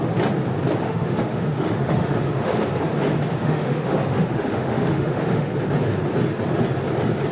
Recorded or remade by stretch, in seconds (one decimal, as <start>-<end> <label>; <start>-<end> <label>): 0.0-0.8 recorded; 0.8-2.6 remade; 2.6-3.4 recorded; 3.4-5.5 remade; 5.5-7.3 recorded